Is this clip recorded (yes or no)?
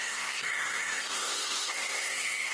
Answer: no